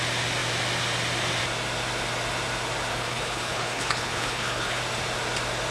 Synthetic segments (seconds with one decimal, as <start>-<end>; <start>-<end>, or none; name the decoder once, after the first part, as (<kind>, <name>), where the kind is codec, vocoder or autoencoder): 2.9-4.8 (codec, HILCodec)